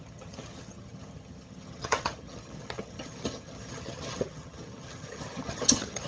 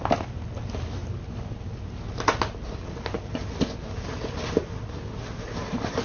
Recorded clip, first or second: second